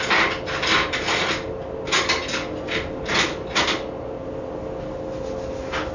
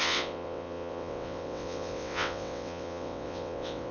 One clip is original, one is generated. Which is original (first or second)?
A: first